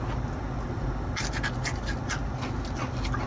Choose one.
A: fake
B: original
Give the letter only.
B